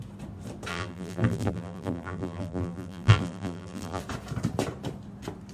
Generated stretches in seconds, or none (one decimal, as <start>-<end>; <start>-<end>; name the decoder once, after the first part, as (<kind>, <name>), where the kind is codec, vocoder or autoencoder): 0.7-4.0 (vocoder, BigVGAN v2)